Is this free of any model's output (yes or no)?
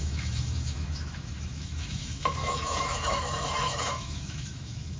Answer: no